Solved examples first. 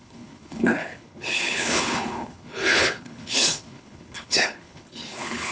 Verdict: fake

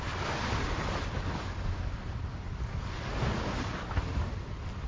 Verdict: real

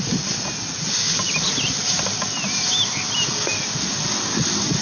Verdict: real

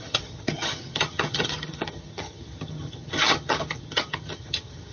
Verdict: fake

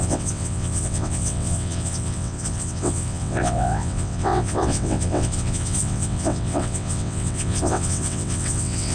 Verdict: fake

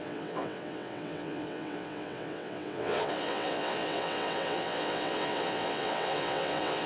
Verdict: fake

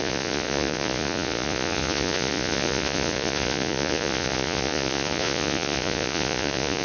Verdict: fake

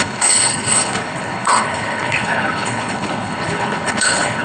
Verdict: fake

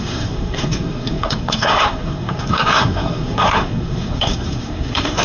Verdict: fake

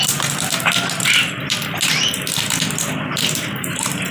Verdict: real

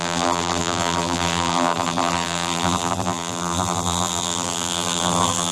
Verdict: fake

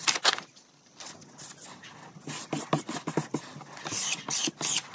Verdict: real